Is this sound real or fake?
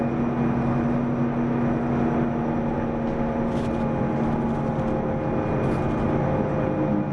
real